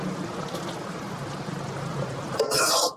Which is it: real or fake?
real